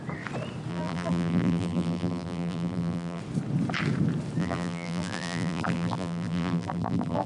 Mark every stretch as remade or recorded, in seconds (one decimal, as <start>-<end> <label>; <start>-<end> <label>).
0.0-0.7 recorded; 0.7-3.2 remade; 3.2-4.4 recorded; 4.4-7.3 remade